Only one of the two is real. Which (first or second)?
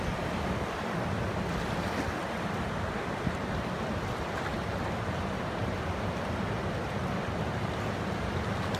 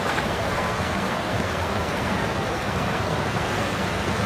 first